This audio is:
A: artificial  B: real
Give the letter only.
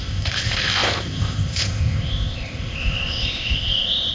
A